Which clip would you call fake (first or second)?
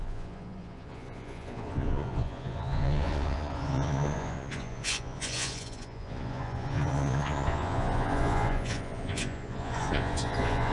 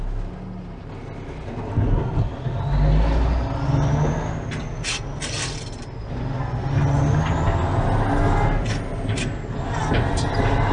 first